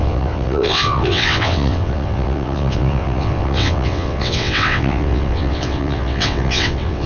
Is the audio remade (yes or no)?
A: yes